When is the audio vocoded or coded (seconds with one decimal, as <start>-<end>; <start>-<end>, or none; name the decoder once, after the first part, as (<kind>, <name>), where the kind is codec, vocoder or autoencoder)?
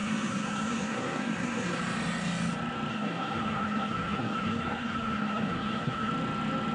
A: 0.0-1.8 (codec, SNAC); 2.9-6.1